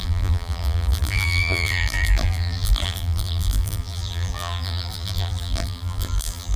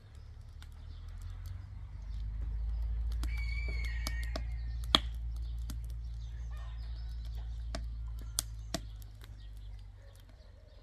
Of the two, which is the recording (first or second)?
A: second